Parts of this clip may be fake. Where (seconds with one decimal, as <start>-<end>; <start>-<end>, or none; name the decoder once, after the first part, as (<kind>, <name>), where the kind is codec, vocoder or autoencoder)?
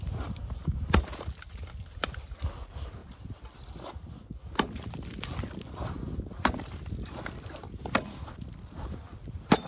none